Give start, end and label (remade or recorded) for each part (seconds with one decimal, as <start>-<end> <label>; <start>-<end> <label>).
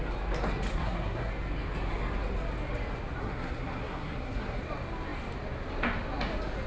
0.0-0.7 recorded; 0.7-1.3 remade; 1.3-3.2 recorded; 3.2-4.6 remade; 4.6-6.7 recorded